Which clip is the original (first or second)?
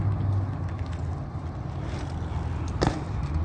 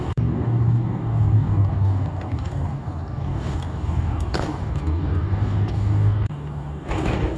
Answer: first